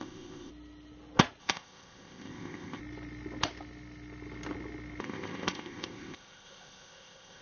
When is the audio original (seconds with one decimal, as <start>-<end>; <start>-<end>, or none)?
0.5-1.4; 2.8-5.0